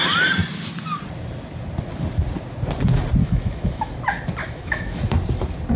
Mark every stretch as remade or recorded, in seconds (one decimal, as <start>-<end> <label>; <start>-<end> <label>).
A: 0.0-3.2 recorded; 3.2-3.9 remade; 3.9-4.4 recorded; 4.4-5.0 remade; 5.0-5.8 recorded